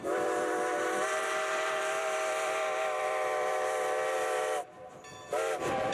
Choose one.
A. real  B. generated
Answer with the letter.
B